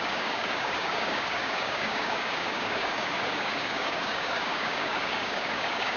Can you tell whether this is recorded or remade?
remade